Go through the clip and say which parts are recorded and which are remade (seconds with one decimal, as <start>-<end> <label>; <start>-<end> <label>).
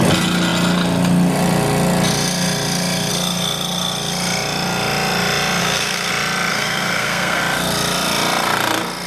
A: 0.0-5.6 recorded; 5.6-6.1 remade; 6.1-6.5 recorded; 6.5-7.4 remade; 7.4-9.1 recorded